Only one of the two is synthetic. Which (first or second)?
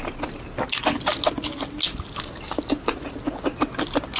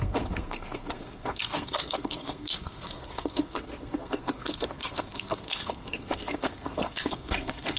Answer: second